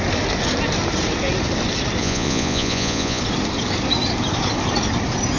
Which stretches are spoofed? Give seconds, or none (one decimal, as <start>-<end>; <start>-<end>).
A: 2.0-3.2